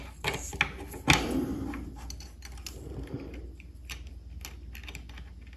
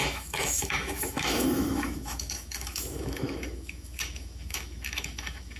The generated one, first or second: second